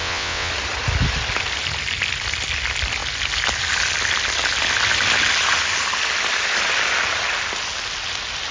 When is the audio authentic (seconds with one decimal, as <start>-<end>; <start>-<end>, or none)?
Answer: 0.5-8.5